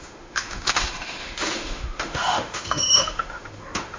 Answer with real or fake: fake